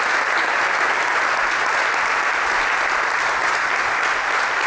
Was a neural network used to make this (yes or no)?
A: no